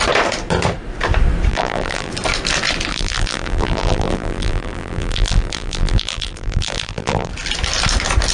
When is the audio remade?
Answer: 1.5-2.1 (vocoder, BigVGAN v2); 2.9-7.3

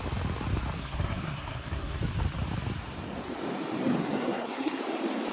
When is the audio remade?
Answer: 0.8-2.0 (codec, SNAC); 4.0-4.8

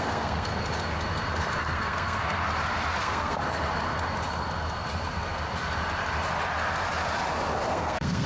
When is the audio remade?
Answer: 0.0-0.5 (codec, SNAC); 1.6-2.4; 3.0-3.4; 7.7-8.3

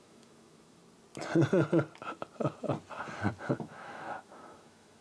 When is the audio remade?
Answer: 0.0-0.8 (autoencoder, DAC-VAE); 3.4-5.0

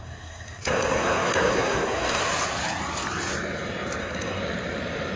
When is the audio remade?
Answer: 0.0-2.2 (codec, SNAC); 4.0-4.4

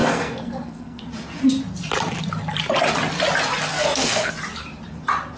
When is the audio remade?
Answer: 0.0-1.0 (codec, SNAC); 3.7-4.3

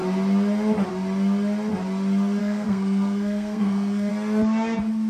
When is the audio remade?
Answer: 2.4-4.1 (codec, SNAC)

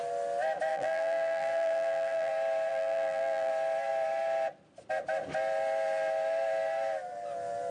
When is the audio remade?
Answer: 0.7-2.3 (vocoder, BigVGAN v2); 2.7-3.5